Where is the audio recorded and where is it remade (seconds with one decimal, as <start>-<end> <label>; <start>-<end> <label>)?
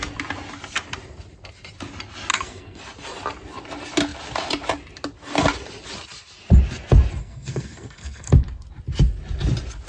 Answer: 0.0-2.3 recorded; 2.3-2.8 remade; 2.8-7.2 recorded; 7.2-8.3 remade; 8.3-9.9 recorded